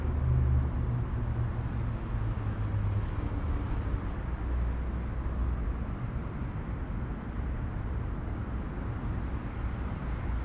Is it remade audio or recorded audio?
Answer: recorded